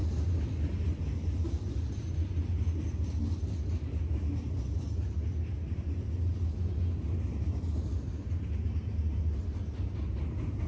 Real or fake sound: real